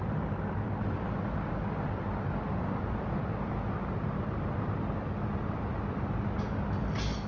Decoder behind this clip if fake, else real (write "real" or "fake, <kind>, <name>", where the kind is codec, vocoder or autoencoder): real